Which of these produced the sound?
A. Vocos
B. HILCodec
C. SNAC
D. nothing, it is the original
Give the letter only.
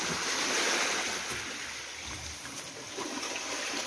D